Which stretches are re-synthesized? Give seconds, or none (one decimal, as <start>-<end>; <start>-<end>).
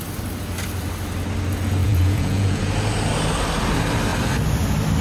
1.8-2.7